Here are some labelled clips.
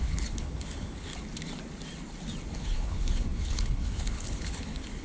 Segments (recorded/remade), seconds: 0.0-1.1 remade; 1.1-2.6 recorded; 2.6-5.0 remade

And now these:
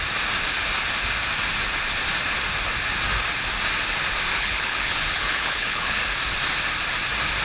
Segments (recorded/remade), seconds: 0.0-4.3 recorded; 4.3-6.0 remade; 6.0-7.4 recorded